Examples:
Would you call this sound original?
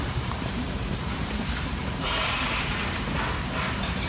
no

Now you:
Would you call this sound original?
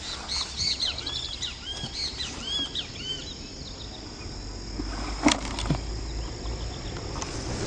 yes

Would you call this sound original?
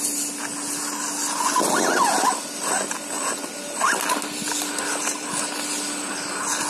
yes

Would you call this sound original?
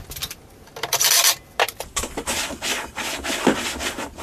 yes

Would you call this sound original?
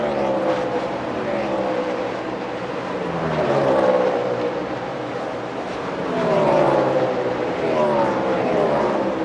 no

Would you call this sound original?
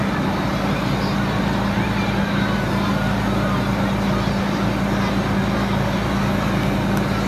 yes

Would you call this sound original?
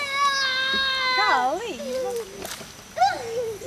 yes